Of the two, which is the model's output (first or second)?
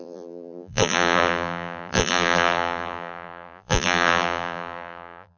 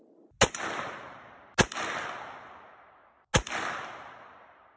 first